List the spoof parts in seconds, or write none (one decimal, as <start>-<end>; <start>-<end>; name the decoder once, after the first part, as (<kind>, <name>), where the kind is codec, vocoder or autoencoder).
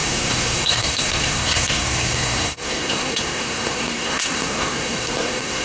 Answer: 0.0-5.6 (codec, SNAC)